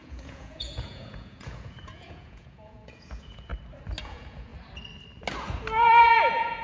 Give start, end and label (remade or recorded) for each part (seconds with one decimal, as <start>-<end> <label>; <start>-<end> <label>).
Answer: 0.0-3.5 remade; 3.5-4.0 recorded; 4.0-4.5 remade; 4.5-6.0 recorded; 6.0-6.6 remade